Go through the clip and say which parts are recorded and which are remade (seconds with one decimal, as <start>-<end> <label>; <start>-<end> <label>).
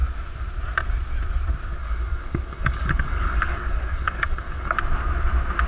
0.0-1.8 recorded; 1.8-4.7 remade; 4.7-5.7 recorded